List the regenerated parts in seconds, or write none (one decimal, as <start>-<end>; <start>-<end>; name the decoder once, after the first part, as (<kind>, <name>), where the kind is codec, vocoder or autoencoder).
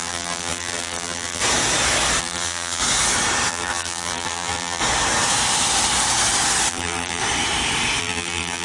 0.0-1.4 (vocoder, BigVGAN v2); 2.2-2.8; 3.5-4.8; 6.7-7.2; 8.0-8.6